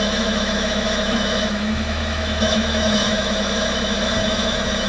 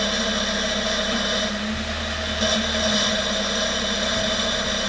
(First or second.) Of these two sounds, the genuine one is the second